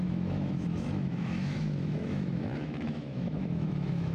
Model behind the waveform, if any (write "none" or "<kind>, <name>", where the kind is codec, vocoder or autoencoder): autoencoder, DAC-VAE